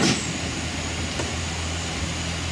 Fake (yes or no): no